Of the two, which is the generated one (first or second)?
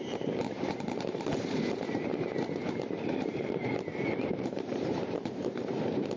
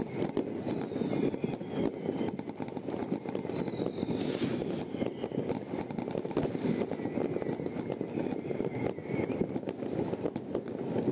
first